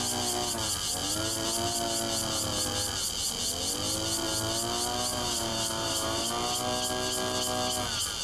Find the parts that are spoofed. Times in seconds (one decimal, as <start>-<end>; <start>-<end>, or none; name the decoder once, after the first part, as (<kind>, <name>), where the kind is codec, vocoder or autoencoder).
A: 5.1-6.3 (vocoder, BigVGAN v2)